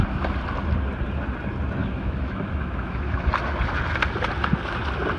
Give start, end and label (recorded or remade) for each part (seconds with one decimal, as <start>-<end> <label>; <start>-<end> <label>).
0.0-1.8 recorded; 1.8-3.3 remade; 3.3-5.2 recorded